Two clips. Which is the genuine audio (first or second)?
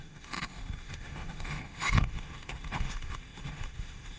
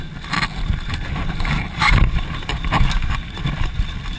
second